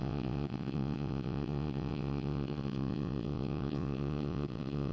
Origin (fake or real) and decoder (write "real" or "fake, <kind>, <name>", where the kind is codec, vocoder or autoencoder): fake, vocoder, WaveNeXt